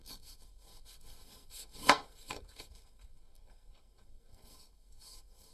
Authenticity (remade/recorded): remade